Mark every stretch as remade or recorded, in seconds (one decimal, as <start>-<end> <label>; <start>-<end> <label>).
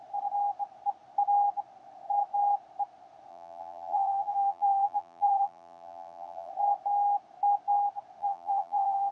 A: 0.0-3.3 recorded; 3.3-6.5 remade; 6.5-8.2 recorded; 8.2-9.1 remade